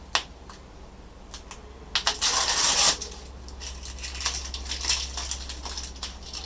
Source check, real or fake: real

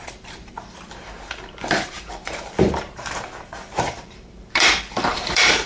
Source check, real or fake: fake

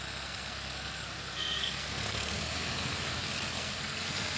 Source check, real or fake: fake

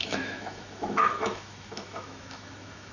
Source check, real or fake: fake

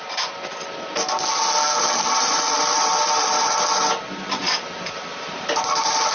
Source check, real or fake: real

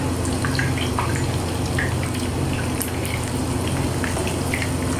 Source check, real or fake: real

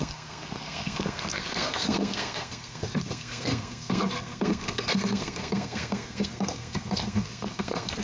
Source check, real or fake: fake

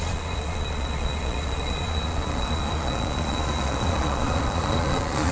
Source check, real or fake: fake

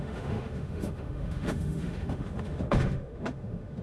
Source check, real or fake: fake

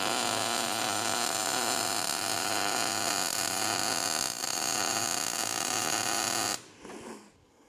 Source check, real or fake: real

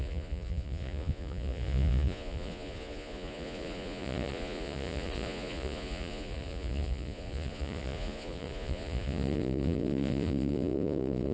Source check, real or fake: fake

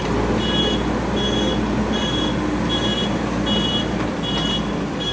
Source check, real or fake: real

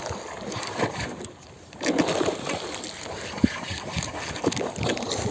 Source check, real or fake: real